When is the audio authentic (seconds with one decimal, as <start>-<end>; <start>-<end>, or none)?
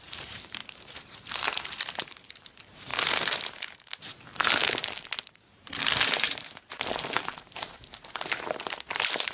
2.9-5.3